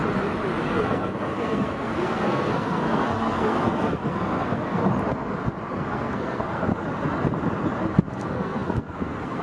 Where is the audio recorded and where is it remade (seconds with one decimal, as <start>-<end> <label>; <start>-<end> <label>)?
0.0-0.6 recorded; 0.6-4.8 remade; 4.8-5.7 recorded; 5.7-6.7 remade; 6.7-8.1 recorded; 8.1-9.4 remade

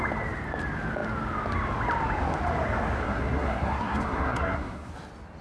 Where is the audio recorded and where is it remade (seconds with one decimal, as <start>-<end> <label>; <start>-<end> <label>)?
0.0-3.0 recorded; 3.0-4.9 remade; 4.9-5.4 recorded

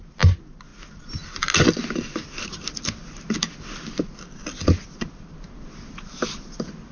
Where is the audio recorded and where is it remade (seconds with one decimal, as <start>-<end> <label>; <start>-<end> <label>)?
0.0-6.9 recorded